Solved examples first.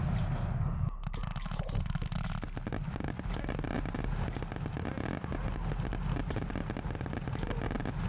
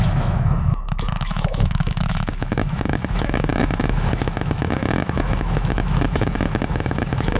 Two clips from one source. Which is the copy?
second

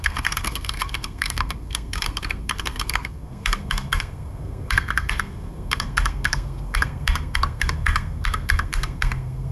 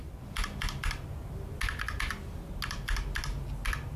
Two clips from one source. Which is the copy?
first